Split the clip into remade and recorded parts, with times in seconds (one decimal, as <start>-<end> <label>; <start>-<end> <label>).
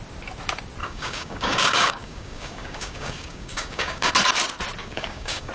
0.0-0.8 recorded; 0.8-4.1 remade; 4.1-4.8 recorded; 4.8-5.5 remade